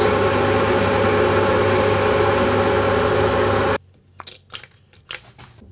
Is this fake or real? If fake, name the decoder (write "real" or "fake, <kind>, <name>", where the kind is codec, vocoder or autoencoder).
real